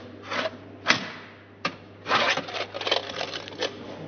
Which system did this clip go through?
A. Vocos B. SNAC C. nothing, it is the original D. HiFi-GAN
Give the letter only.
C